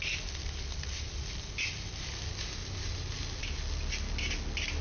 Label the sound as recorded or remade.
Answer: recorded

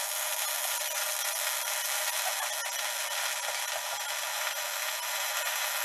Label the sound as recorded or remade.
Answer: recorded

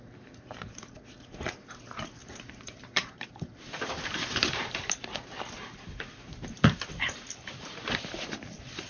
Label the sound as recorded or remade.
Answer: remade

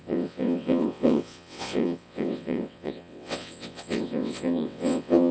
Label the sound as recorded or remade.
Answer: remade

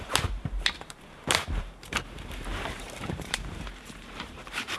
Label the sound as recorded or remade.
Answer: remade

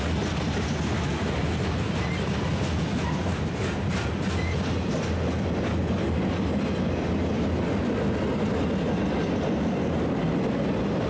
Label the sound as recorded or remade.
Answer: recorded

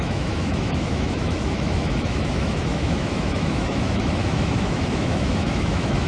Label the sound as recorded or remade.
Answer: remade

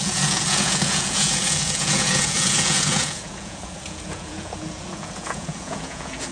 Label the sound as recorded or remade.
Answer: remade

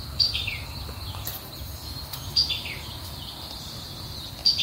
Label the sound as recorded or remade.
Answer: recorded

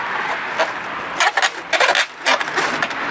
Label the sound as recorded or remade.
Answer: recorded